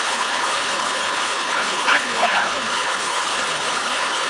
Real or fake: fake